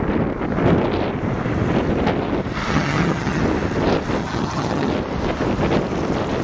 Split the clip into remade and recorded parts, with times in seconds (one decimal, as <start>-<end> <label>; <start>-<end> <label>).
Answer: 0.0-2.7 recorded; 2.7-3.4 remade; 3.4-4.2 recorded; 4.2-4.9 remade; 4.9-6.4 recorded